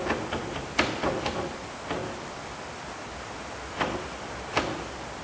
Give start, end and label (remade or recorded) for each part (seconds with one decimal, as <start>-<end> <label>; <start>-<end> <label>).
0.0-5.2 recorded